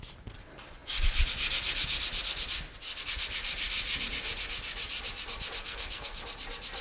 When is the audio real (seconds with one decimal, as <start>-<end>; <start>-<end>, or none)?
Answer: 0.0-5.6; 6.2-6.8